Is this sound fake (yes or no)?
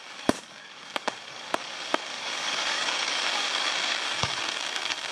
yes